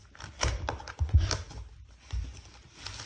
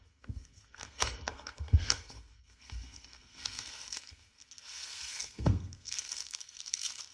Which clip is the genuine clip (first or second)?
first